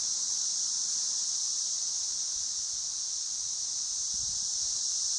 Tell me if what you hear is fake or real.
fake